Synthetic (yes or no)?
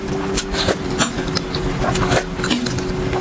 no